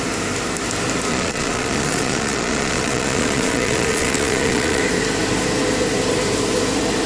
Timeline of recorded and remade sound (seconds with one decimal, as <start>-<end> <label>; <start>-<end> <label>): 0.0-1.1 recorded; 1.1-4.8 remade; 4.8-7.1 recorded